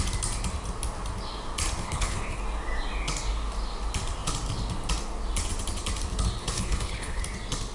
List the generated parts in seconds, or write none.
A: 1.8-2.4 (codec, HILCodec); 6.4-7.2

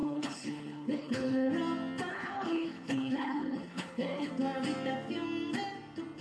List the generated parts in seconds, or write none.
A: 0.0-1.5 (codec, HILCodec); 2.1-4.3

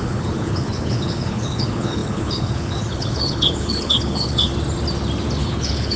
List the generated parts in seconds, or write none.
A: 0.0-4.5 (codec, HILCodec); 5.4-6.0